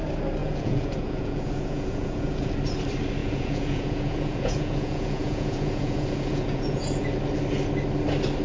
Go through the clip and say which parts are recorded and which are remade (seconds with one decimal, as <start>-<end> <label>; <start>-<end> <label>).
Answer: 0.0-0.4 recorded; 0.4-2.5 remade; 2.5-3.2 recorded; 3.2-7.1 remade; 7.1-8.4 recorded